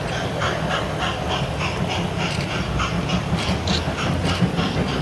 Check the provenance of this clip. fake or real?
real